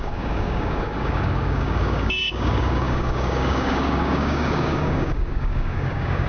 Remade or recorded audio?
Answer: remade